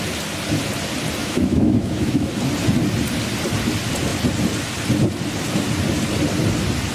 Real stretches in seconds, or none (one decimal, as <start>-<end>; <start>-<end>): 0.0-1.2; 2.3-6.9